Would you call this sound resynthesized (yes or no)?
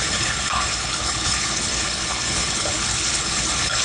yes